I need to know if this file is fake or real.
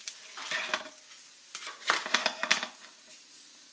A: real